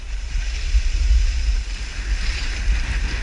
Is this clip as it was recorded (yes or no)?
yes